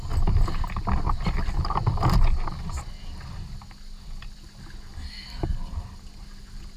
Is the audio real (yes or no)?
yes